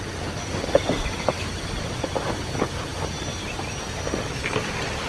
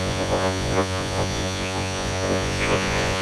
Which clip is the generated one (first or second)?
second